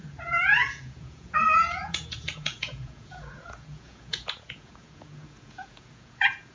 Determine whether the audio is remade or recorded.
remade